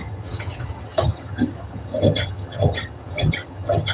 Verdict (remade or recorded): remade